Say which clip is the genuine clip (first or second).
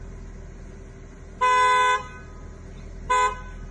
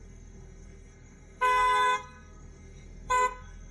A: first